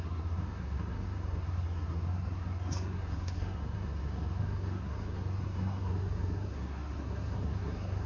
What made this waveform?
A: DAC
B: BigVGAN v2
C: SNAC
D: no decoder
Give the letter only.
C